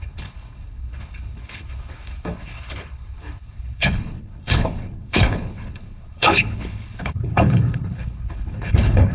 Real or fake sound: fake